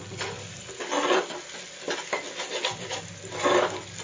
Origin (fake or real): real